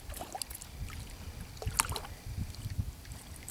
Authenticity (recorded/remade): recorded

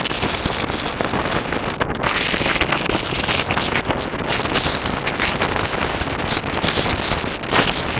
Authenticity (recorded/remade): recorded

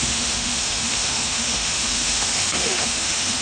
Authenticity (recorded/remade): remade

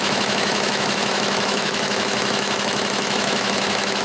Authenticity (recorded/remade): remade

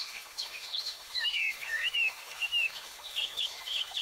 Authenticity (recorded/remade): remade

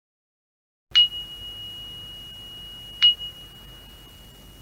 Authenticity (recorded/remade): recorded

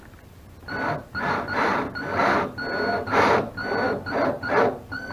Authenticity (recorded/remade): recorded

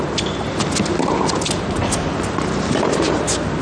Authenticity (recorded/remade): recorded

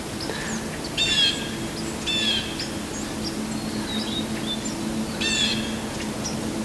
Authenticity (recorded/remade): recorded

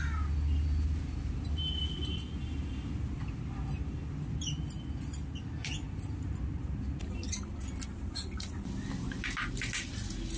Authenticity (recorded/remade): recorded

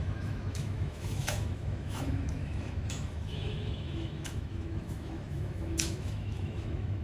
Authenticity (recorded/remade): remade